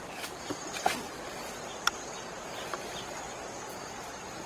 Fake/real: real